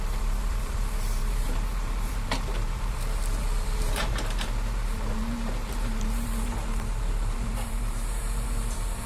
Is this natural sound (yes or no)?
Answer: no